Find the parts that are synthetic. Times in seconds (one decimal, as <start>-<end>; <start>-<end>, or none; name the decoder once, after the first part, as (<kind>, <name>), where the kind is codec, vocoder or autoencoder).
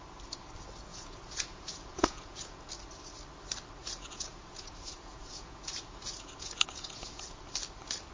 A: 0.9-2.7 (vocoder, Vocos); 3.8-7.4